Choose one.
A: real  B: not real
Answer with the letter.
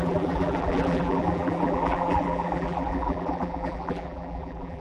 B